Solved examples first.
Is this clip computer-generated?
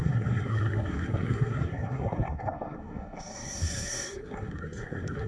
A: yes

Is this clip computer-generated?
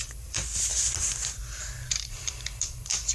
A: yes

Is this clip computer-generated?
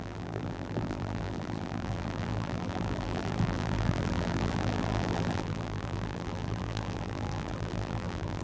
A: yes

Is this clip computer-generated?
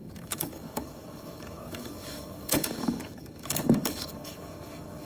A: yes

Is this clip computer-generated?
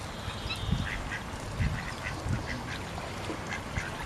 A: no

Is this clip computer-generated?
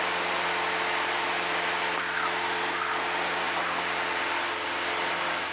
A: no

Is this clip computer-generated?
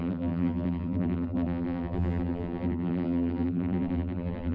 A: yes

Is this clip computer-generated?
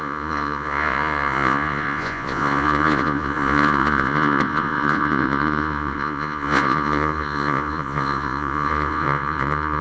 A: yes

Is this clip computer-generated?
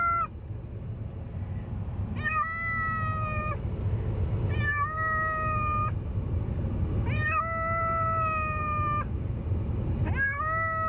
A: no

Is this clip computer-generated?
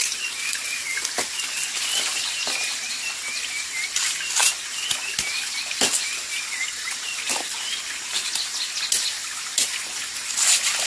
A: no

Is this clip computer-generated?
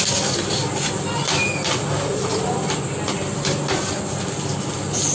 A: no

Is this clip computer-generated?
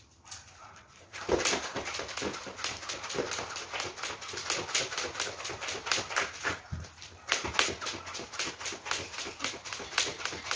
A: no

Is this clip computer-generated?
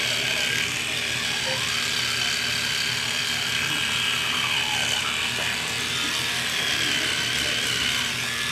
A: no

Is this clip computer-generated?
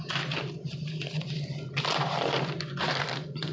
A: no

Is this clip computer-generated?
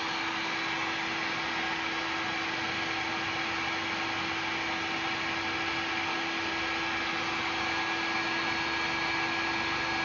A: no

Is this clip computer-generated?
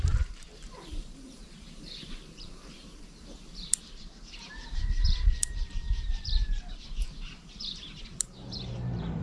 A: yes